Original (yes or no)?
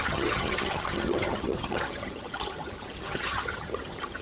no